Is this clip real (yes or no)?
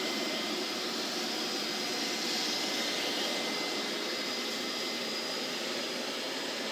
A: yes